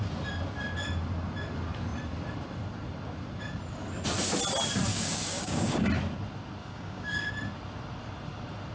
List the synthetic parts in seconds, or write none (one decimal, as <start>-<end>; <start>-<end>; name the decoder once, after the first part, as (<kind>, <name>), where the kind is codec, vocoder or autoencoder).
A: 4.9-5.8 (codec, DAC); 6.6-7.3